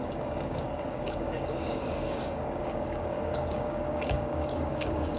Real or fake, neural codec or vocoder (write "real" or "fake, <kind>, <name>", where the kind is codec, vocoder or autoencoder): fake, codec, DAC